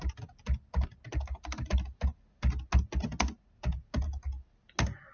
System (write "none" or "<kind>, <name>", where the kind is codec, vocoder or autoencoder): none